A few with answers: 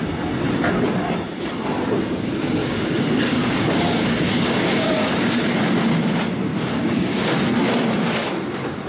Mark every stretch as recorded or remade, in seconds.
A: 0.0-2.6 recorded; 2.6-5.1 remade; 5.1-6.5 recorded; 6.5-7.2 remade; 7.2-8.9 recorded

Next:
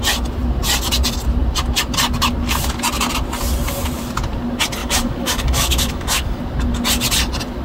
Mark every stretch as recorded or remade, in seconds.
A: 0.0-4.8 recorded; 4.8-6.4 remade; 6.4-7.6 recorded

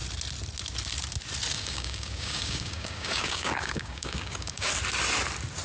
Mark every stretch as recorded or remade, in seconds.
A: 0.0-1.5 recorded; 1.5-4.7 remade; 4.7-5.6 recorded

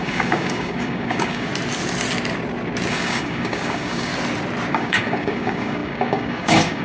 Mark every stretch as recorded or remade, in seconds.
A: 0.0-1.5 remade; 1.5-2.9 recorded; 2.9-4.1 remade; 4.1-4.7 recorded; 4.7-6.8 remade

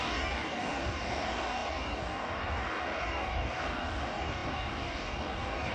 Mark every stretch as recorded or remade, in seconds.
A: 0.0-5.7 remade